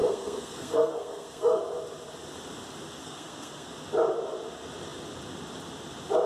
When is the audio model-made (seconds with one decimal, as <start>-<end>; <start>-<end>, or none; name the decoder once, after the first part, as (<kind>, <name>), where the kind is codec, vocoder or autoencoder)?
0.0-1.6 (codec, SNAC); 3.0-3.7